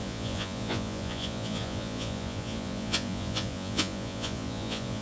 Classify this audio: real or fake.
fake